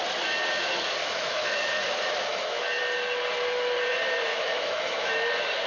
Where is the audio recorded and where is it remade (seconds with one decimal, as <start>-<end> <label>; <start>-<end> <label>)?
0.0-1.0 recorded; 1.0-1.8 remade; 1.8-2.3 recorded; 2.3-2.8 remade; 2.8-4.3 recorded; 4.3-5.3 remade; 5.3-5.7 recorded